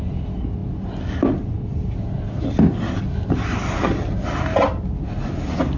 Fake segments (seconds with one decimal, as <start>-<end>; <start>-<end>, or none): none